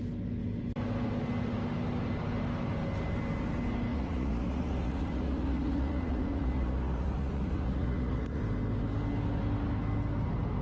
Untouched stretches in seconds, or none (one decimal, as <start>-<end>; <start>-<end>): 0.0-3.9; 8.4-10.6